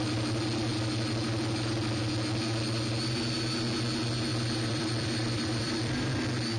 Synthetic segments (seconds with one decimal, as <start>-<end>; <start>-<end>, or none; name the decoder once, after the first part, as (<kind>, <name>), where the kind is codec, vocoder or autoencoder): 4.3-6.1 (vocoder, BigVGAN v2)